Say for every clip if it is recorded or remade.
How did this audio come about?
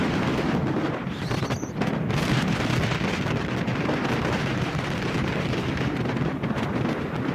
recorded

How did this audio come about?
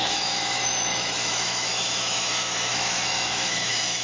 remade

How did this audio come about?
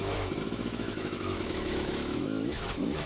remade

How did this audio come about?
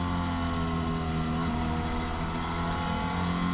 recorded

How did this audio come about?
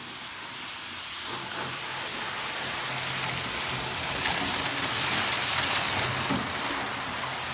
recorded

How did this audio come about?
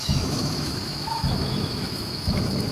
remade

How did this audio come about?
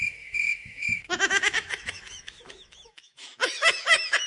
remade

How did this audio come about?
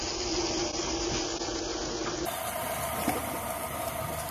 recorded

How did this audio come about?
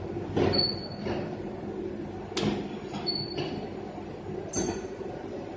recorded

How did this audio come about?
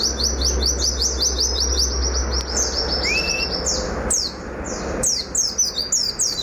recorded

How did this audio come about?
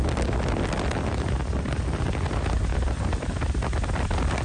recorded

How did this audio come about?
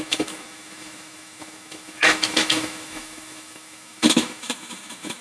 remade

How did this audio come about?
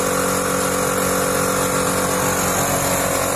recorded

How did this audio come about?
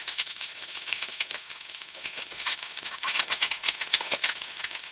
remade